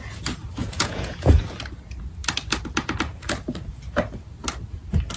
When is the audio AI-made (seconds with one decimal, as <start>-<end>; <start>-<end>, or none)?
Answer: 0.6-1.4